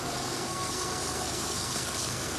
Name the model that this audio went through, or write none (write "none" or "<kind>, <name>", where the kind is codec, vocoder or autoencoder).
codec, SNAC